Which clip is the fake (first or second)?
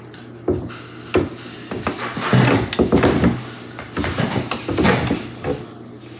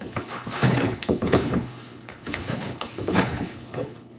second